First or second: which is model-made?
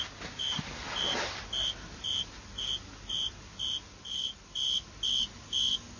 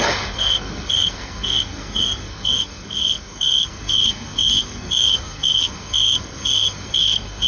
second